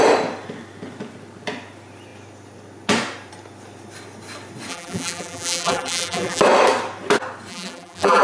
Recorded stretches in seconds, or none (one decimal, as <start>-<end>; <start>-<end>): 0.0-4.7; 6.4-7.5